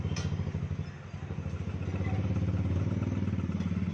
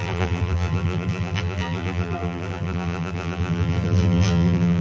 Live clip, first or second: first